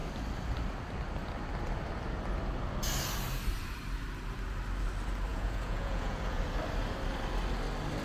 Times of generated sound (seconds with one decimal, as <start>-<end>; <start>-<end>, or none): 5.3-6.4